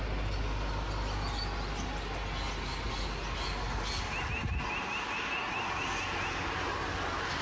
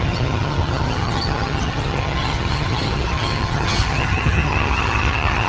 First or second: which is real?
first